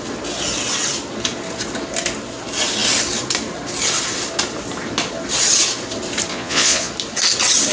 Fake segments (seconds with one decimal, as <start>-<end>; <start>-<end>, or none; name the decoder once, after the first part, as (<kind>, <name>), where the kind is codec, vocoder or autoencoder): 6.3-6.9 (vocoder, Vocos)